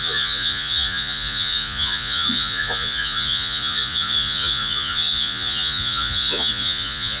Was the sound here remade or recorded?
remade